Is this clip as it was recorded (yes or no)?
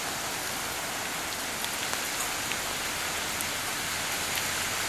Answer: yes